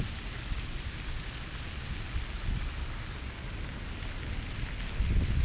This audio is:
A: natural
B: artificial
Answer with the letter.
A